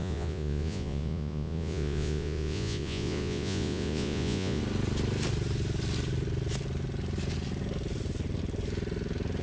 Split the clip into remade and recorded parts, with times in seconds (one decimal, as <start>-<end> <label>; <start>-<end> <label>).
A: 0.0-4.6 remade; 4.6-9.4 recorded